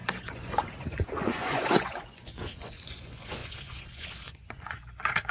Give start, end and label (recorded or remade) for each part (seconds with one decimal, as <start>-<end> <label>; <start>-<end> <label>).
0.0-5.3 remade

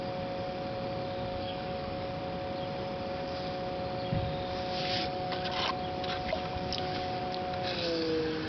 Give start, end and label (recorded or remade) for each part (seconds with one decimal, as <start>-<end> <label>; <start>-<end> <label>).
0.0-1.3 recorded; 1.3-2.2 remade; 2.2-4.8 recorded; 4.8-5.5 remade; 5.5-6.5 recorded; 6.5-7.2 remade; 7.2-8.5 recorded

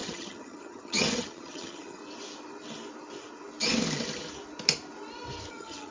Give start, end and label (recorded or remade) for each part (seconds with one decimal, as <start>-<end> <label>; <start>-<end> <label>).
0.0-2.0 remade; 2.0-5.5 recorded; 5.5-5.9 remade

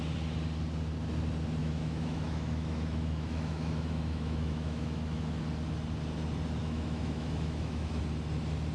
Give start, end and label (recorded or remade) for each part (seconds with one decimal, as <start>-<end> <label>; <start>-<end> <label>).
0.0-1.6 recorded; 1.6-5.4 remade; 5.4-6.6 recorded; 6.6-8.0 remade; 8.0-8.7 recorded

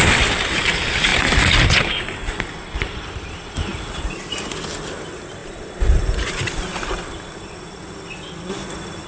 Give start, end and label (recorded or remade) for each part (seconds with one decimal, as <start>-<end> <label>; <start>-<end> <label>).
0.0-9.1 recorded

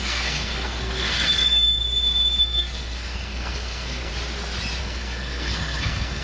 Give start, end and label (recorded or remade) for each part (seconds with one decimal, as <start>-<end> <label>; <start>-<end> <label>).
0.0-1.8 remade; 1.8-2.4 recorded; 2.4-4.1 remade; 4.1-4.8 recorded; 4.8-6.2 remade